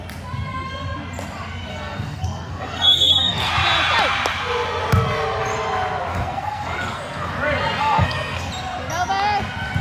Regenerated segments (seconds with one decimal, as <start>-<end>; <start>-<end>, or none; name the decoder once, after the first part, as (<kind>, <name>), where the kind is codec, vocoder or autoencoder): 1.7-3.5 (codec, SNAC); 6.1-7.3; 7.8-8.5